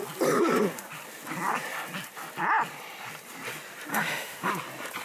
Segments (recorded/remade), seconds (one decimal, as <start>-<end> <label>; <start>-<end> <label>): 0.0-3.9 recorded; 3.9-4.5 remade; 4.5-5.0 recorded